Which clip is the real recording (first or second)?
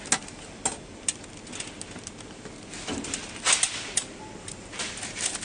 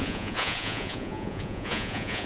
first